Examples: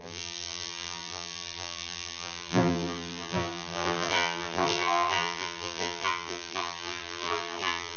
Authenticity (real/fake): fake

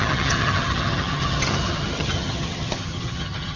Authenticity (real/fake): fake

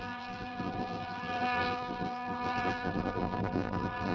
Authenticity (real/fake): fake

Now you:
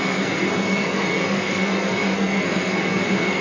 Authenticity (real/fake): fake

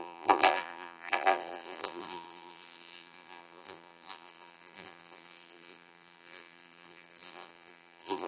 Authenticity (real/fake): fake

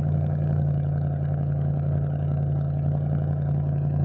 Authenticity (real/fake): fake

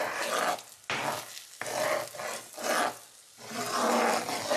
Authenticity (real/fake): real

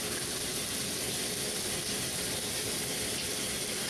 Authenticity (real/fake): real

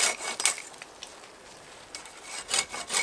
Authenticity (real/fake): real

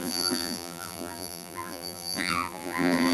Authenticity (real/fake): fake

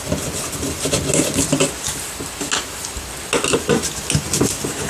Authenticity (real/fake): real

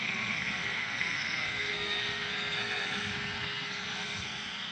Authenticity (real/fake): fake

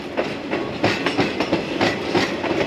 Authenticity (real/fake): real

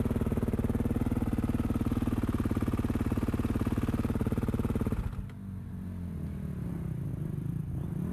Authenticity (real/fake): real